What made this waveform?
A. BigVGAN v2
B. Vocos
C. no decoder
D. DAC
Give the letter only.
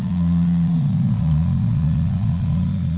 B